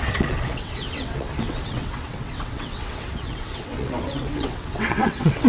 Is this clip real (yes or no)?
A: no